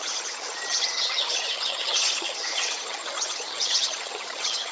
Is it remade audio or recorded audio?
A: remade